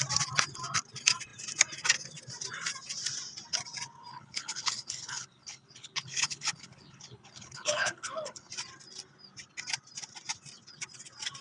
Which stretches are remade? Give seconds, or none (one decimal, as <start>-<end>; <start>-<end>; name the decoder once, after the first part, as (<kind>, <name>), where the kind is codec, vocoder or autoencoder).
4.1-8.5 (codec, HILCodec)